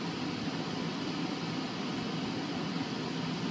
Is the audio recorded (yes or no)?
yes